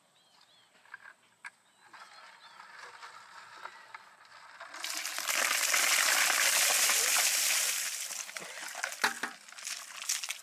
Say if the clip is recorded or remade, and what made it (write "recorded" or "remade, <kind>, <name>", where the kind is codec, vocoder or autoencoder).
recorded